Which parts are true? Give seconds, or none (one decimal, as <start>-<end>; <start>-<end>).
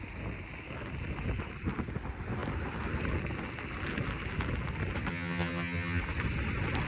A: 0.0-5.1; 6.0-6.9